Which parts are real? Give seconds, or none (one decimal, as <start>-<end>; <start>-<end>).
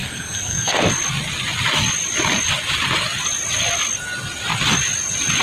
0.8-5.4